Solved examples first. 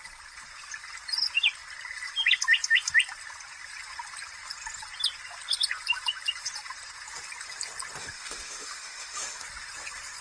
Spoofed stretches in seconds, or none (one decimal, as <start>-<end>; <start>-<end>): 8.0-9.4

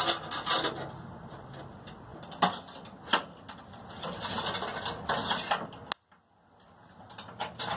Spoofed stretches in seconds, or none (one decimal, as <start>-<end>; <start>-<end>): none

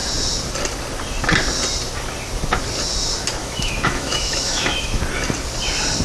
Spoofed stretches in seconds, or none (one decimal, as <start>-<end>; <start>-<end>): 3.4-5.0

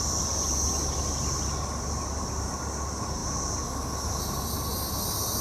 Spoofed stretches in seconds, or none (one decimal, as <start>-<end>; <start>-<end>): none

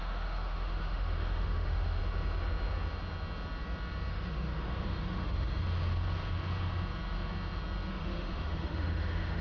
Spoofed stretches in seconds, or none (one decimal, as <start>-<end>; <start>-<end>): 0.0-2.0; 4.1-5.6; 7.9-9.4